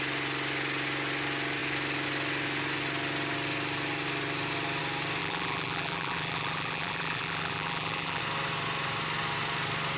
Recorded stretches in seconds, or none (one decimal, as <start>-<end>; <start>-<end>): 0.0-5.2; 8.2-10.0